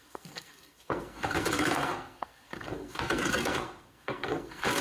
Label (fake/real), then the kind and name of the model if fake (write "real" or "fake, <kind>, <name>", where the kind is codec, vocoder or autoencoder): fake, codec, SNAC